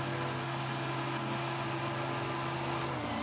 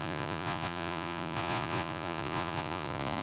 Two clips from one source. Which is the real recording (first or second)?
first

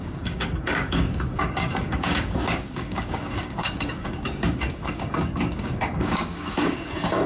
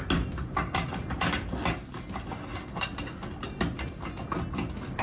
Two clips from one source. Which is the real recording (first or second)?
second